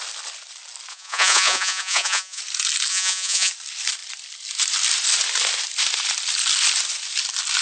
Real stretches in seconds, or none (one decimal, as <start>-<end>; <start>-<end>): 0.0-0.9; 2.4-2.9; 3.5-7.6